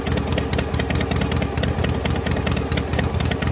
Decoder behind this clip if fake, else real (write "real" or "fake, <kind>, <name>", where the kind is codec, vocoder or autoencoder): real